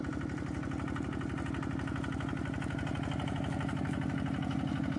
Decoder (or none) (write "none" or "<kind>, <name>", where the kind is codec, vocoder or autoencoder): none